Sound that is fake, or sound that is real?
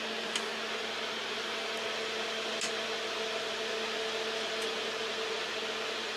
real